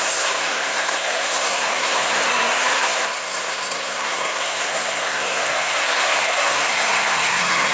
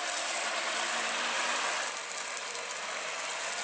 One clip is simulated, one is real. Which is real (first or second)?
second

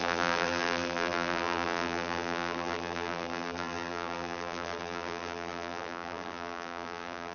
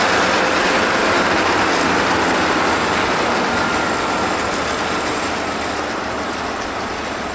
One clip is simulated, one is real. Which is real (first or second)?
second